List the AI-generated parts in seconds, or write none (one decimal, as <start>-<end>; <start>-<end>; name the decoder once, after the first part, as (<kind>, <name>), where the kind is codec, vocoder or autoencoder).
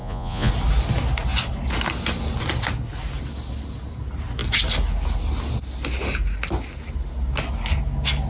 0.0-0.5 (vocoder, Vocos)